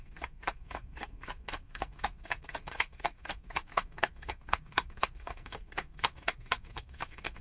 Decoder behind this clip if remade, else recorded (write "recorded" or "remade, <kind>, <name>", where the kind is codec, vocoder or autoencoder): remade, codec, SNAC